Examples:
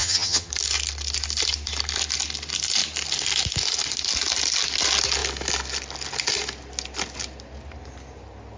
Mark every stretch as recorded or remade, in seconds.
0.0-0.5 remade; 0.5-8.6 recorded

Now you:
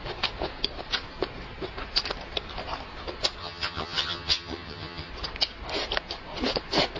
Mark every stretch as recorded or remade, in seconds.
0.0-3.4 recorded; 3.4-5.1 remade; 5.1-7.0 recorded